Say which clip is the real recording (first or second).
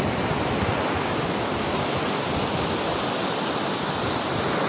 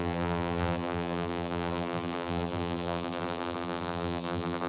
first